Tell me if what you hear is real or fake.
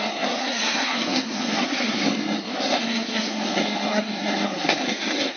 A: fake